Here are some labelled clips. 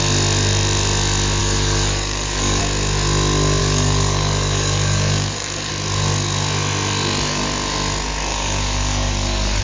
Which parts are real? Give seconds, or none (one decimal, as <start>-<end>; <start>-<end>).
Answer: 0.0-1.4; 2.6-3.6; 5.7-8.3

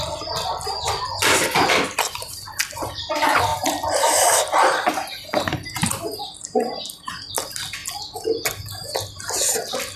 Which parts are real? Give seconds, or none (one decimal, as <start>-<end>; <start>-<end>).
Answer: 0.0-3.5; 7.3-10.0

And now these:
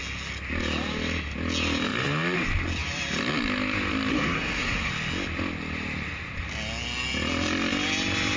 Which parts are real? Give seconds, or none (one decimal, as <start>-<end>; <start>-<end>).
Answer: 0.0-4.1; 4.9-8.4

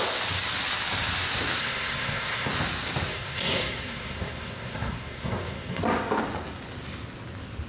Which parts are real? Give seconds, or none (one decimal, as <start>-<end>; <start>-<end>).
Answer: 0.0-1.6; 2.5-3.1; 5.8-7.7

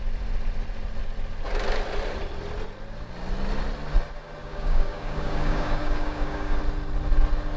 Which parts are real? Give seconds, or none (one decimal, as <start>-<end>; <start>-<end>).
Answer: 0.0-4.4; 6.6-7.6